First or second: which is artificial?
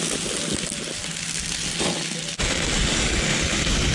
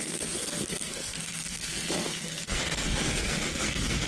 second